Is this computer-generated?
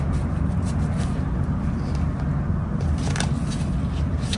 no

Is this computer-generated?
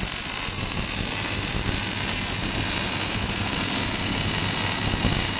no